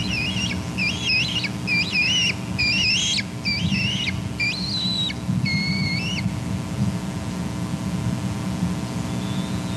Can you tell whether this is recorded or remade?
recorded